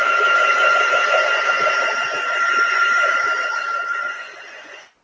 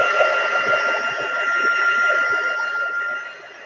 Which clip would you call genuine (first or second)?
second